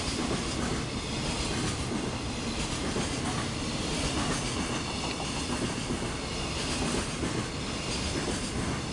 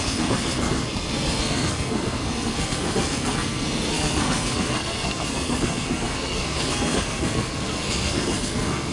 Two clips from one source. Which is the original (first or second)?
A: first